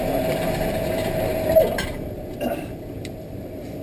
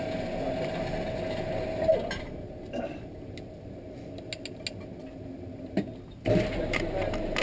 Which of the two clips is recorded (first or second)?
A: second